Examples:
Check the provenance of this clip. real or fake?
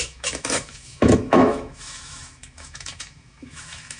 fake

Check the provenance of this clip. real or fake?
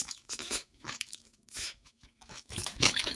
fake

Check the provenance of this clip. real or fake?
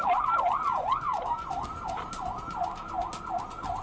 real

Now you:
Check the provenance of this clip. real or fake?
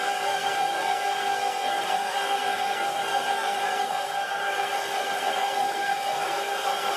fake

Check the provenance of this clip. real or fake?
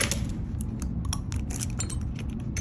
real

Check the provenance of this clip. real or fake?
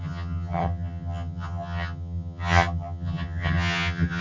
fake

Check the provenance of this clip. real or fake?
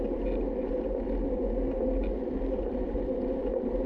real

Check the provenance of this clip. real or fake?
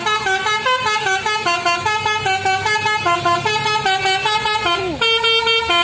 real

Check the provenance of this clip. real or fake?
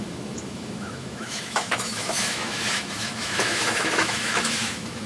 fake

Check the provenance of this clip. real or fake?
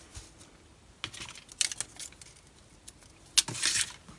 real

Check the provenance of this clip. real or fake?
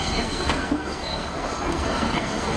fake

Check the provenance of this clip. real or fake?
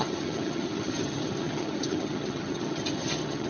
fake